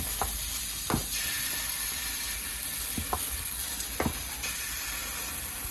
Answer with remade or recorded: recorded